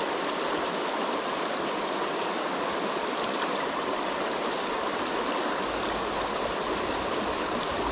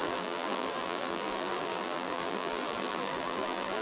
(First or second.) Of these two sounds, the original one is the first